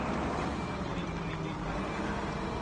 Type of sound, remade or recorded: recorded